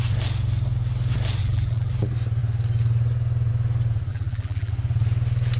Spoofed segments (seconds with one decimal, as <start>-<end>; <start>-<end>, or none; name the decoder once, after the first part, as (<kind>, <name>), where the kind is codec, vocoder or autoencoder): 1.4-1.9 (vocoder, BigVGAN v2); 4.1-4.7